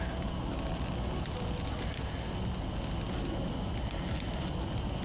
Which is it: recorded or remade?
recorded